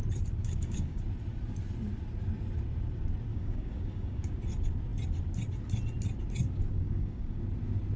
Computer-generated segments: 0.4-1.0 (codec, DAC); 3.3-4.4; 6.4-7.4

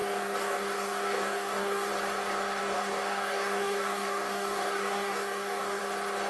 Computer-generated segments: 0.0-1.9 (codec, DAC); 2.6-5.8

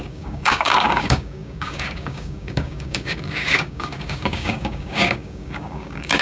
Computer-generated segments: 0.0-6.2 (codec, DAC)